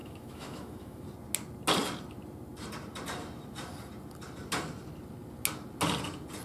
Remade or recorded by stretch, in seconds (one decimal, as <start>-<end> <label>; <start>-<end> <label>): 0.0-1.0 remade; 1.0-6.4 recorded